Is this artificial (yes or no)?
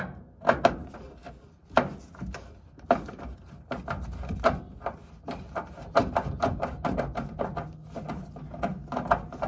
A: no